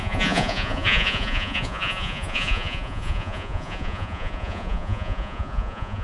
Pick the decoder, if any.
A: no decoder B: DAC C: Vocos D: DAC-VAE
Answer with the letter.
C